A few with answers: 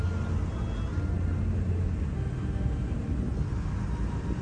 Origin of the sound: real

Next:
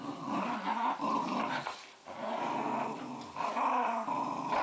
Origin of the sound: real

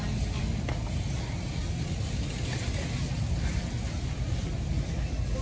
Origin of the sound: real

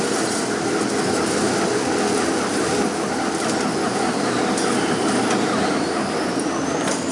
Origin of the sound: real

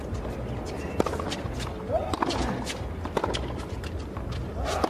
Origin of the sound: real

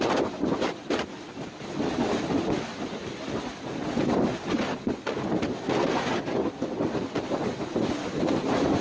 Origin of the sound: real